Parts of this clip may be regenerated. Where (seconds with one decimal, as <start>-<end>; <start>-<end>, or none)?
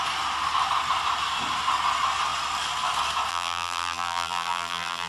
3.3-5.1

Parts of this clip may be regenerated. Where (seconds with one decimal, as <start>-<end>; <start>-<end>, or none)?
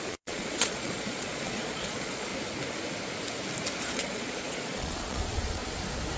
0.0-2.3; 3.8-5.6